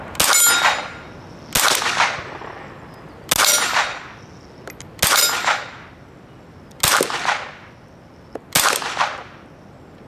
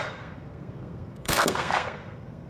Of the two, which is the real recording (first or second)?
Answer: first